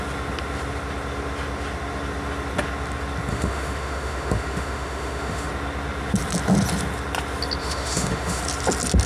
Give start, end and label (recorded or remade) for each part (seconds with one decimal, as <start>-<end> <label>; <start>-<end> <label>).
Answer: 0.0-3.3 recorded; 3.3-5.5 remade; 5.5-7.6 recorded; 7.6-8.4 remade; 8.4-9.1 recorded